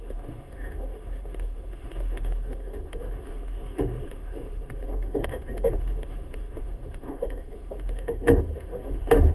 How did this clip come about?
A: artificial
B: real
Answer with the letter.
A